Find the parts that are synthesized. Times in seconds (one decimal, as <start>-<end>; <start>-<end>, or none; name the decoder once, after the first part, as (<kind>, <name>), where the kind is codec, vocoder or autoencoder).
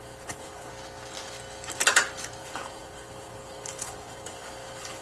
0.0-0.7 (codec, HILCodec); 2.4-5.0